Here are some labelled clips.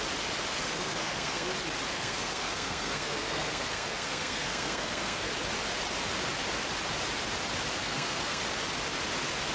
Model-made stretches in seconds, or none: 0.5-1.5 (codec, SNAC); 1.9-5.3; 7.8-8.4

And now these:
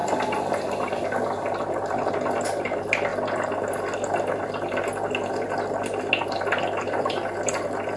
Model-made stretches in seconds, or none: none

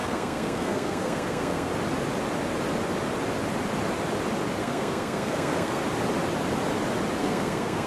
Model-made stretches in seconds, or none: 0.0-1.7 (codec, SNAC); 4.6-5.8; 7.2-7.9